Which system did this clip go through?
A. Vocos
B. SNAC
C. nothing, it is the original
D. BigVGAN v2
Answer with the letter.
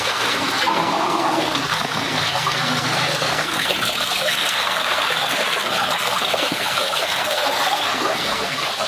B